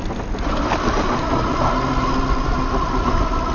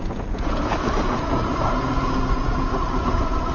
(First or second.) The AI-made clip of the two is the second